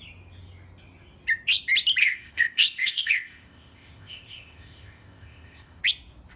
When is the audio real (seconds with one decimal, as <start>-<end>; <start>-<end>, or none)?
0.0-2.0; 5.8-6.4